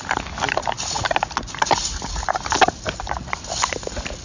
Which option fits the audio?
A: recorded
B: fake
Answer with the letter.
A